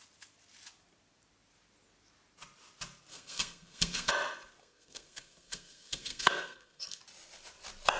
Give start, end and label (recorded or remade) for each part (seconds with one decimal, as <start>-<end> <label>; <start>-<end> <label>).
0.0-3.1 recorded; 3.1-4.1 remade; 4.1-4.6 recorded; 4.6-7.0 remade; 7.0-8.0 recorded